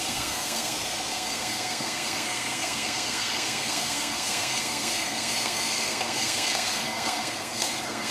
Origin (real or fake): fake